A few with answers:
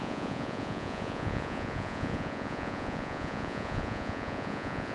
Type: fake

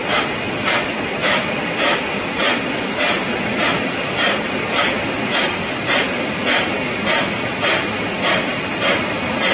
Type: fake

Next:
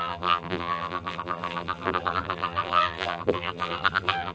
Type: fake